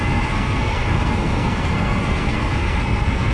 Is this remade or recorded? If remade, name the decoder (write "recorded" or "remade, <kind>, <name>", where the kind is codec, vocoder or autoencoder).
remade, codec, SNAC